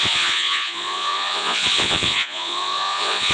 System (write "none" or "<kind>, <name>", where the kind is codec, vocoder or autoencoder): vocoder, Vocos